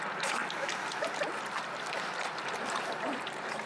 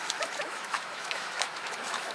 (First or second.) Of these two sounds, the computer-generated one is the second